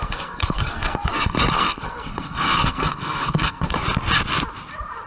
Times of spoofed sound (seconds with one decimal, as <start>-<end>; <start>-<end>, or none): 0.0-3.8